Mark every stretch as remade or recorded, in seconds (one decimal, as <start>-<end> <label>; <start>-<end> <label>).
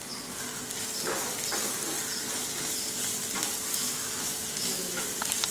0.0-3.7 recorded; 3.7-5.0 remade; 5.0-5.5 recorded